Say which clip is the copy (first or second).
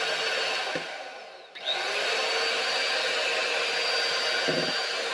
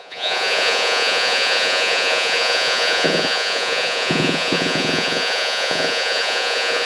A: second